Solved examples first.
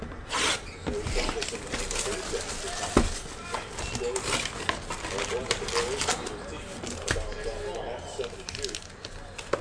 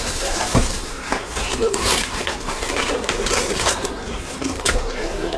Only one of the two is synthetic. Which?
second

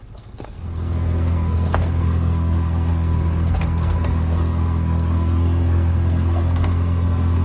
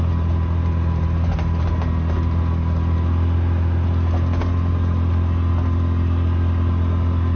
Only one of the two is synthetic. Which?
first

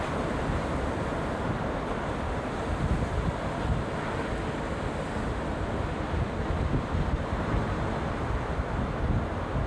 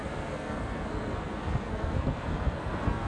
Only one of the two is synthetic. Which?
second